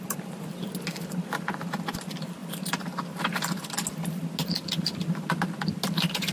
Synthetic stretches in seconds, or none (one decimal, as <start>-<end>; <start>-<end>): none